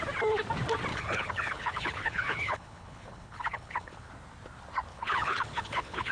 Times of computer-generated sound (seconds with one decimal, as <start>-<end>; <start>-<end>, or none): 0.9-4.1; 4.9-6.1